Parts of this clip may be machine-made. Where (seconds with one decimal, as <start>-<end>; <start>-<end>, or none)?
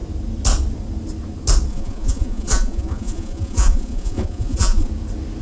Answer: 1.7-4.9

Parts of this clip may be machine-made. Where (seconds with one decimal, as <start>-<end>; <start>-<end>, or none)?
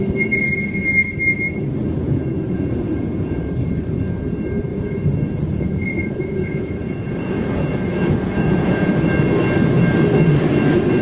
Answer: 2.0-3.5; 4.7-8.9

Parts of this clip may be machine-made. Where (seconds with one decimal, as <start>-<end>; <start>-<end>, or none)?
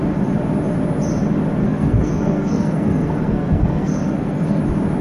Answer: 1.6-4.6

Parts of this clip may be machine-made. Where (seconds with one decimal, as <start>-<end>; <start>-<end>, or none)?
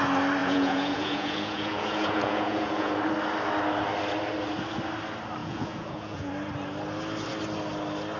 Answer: 0.4-2.9; 5.4-6.3